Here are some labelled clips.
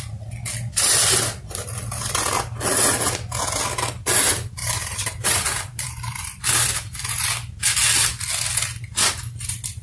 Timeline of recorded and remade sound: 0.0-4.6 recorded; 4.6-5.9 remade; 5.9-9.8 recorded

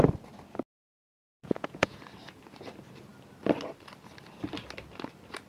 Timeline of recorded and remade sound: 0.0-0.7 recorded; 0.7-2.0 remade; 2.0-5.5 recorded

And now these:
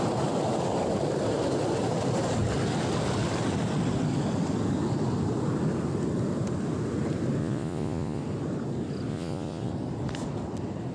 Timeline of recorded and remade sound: 0.0-7.4 recorded; 7.4-8.2 remade; 8.2-9.1 recorded; 9.1-9.7 remade; 9.7-10.9 recorded